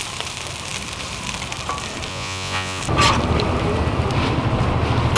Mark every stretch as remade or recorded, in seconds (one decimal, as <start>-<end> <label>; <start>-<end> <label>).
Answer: 0.0-2.1 recorded; 2.1-2.8 remade; 2.8-5.2 recorded